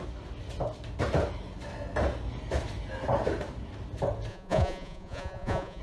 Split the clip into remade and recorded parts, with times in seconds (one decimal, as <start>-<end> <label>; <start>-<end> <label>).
0.0-4.3 recorded; 4.3-5.8 remade